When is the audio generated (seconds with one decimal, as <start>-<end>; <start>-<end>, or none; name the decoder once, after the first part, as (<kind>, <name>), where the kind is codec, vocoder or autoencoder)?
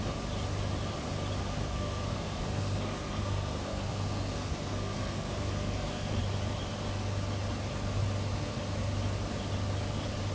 1.4-6.2 (codec, SNAC)